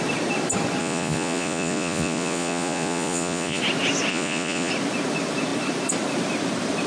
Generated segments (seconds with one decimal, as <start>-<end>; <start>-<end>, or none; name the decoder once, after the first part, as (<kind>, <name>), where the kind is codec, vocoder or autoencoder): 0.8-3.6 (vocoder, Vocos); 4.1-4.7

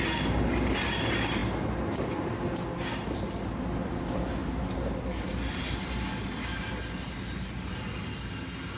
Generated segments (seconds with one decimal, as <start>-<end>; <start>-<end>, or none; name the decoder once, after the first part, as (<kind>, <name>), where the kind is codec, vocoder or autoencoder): none

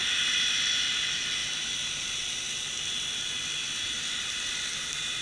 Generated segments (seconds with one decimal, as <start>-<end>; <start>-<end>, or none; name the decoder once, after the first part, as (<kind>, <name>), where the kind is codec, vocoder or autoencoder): none

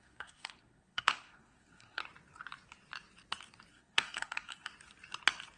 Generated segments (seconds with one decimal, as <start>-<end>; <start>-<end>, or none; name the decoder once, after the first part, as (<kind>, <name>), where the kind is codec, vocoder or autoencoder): 0.0-2.0 (codec, SNAC); 3.7-4.7